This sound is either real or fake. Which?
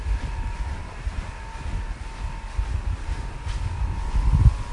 real